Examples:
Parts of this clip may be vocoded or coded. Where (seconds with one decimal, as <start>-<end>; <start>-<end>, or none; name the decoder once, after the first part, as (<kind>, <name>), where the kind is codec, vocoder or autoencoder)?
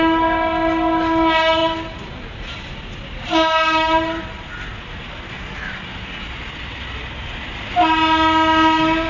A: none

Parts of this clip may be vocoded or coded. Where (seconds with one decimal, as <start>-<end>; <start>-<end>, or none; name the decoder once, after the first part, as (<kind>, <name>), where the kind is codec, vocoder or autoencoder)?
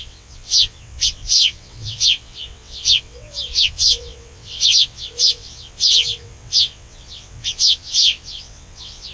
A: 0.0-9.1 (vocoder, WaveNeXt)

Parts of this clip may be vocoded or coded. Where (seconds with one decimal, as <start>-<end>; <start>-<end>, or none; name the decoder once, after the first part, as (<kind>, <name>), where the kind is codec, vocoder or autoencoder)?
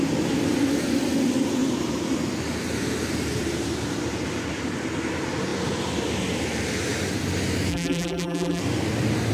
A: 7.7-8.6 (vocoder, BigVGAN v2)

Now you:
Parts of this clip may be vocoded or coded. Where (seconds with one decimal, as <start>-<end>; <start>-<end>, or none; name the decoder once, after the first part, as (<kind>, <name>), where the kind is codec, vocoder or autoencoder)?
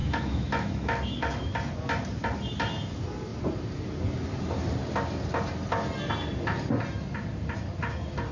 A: 0.0-1.5 (autoencoder, DAC-VAE)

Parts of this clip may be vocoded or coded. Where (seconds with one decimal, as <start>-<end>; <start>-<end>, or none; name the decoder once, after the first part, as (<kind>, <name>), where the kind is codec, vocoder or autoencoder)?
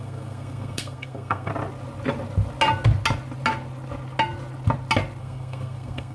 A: 0.0-1.5 (codec, SNAC); 5.2-6.1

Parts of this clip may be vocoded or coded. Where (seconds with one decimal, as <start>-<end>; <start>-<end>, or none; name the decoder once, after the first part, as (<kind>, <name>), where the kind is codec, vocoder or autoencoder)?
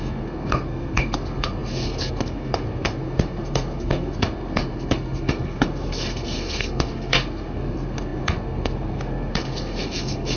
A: 0.0-10.4 (codec, SNAC)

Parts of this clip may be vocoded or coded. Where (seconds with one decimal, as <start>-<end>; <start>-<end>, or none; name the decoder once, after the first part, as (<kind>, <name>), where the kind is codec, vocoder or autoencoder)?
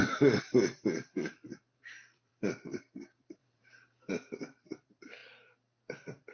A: 0.0-5.2 (vocoder, BigVGAN v2)